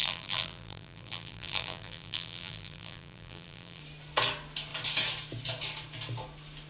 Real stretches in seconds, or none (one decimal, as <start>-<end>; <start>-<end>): 3.8-6.7